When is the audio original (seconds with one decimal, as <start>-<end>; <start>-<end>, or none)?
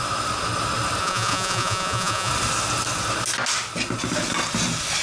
0.0-1.0; 2.3-5.0